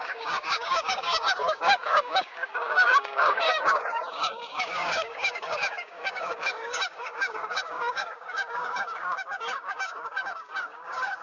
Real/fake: fake